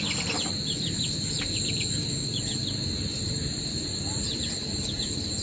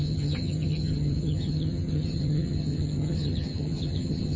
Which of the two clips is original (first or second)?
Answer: first